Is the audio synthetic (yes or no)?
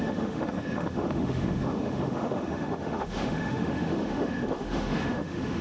yes